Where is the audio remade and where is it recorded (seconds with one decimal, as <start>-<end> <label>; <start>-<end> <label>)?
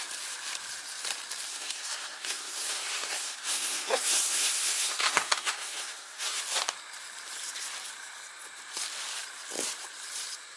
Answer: 0.0-1.5 recorded; 1.5-6.4 remade; 6.4-10.6 recorded